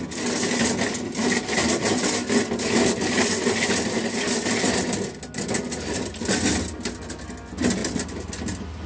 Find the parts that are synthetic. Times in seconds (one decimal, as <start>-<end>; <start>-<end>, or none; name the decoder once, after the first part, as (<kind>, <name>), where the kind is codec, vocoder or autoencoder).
none